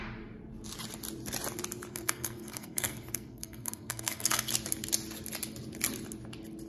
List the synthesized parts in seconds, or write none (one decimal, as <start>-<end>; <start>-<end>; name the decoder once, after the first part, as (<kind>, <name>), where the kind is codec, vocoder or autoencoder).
1.9-4.5 (codec, SNAC)

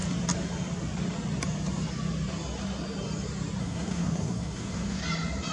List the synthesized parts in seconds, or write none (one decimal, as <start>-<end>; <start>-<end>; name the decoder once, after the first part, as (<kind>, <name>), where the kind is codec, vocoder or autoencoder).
3.6-5.0 (codec, SNAC)

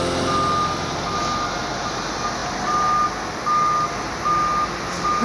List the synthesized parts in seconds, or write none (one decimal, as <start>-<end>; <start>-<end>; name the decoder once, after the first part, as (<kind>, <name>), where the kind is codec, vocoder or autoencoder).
none

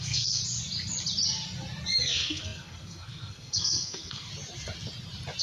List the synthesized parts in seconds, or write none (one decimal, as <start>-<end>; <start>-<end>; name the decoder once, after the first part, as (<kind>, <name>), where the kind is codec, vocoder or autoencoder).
0.0-0.4 (codec, SNAC); 2.0-4.3

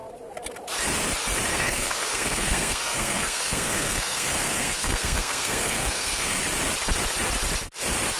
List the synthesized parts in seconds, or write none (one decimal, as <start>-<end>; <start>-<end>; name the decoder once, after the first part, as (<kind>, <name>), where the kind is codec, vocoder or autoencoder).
1.5-6.4 (codec, SNAC)

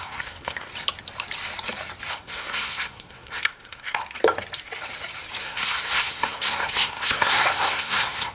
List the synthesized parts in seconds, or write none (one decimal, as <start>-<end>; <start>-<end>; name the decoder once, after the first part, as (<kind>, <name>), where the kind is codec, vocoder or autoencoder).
0.0-0.7 (codec, SNAC); 2.1-4.0; 5.4-8.3